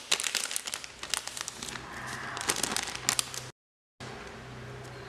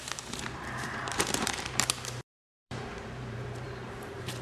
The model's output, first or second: second